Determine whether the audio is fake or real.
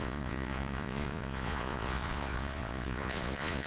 fake